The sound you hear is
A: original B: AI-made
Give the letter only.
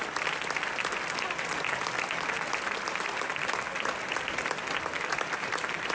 A